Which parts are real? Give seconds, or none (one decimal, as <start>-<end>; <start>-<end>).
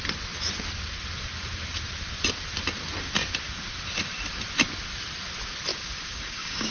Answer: 0.0-5.7